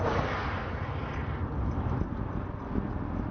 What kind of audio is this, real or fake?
real